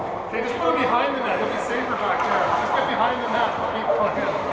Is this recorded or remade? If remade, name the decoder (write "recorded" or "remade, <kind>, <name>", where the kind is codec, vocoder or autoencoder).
recorded